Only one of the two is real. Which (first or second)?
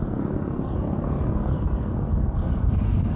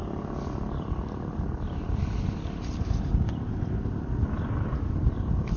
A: second